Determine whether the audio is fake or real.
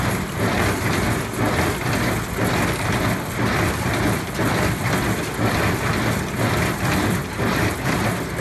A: real